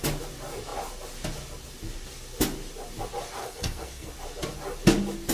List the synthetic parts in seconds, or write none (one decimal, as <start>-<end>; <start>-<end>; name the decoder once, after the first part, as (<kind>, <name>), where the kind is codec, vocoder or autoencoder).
3.4-4.1 (codec, SNAC)